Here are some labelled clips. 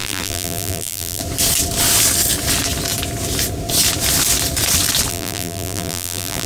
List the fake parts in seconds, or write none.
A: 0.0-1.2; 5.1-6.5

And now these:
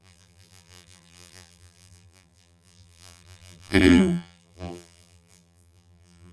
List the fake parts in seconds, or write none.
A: 0.0-6.3

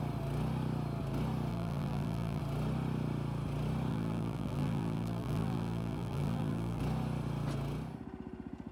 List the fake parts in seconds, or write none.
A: 1.5-2.4; 3.9-6.8